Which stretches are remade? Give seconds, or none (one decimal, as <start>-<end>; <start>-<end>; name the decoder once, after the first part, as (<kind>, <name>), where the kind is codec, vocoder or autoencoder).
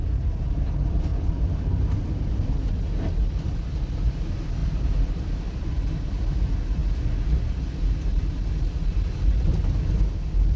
1.1-2.3 (vocoder, BigVGAN v2); 4.6-5.2